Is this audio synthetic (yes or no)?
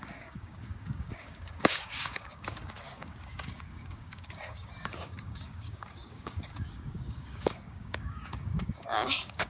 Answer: yes